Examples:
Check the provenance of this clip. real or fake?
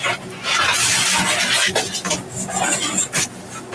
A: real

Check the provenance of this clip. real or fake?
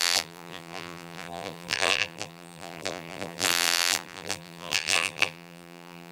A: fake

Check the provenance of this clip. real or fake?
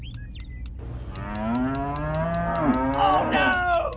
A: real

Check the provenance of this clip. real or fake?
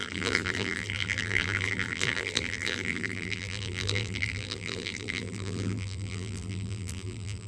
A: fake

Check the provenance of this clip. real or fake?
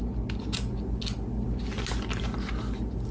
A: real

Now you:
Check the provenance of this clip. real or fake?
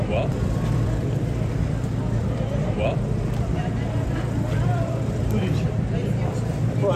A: fake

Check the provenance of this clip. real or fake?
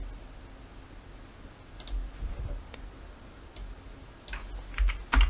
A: real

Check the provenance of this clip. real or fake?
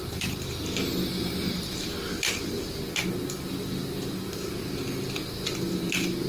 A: real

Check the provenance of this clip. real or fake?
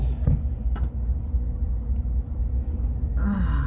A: real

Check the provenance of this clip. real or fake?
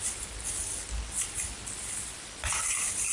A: real